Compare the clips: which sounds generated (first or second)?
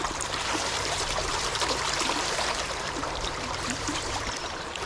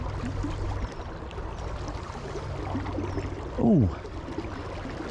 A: first